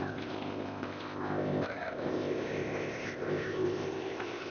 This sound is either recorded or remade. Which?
remade